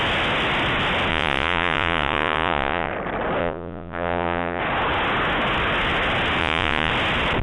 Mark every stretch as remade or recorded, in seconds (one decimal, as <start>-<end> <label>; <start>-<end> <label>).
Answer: 0.0-1.1 recorded; 1.1-2.9 remade; 2.9-3.4 recorded; 3.4-4.6 remade; 4.6-6.4 recorded; 6.4-6.9 remade; 6.9-7.4 recorded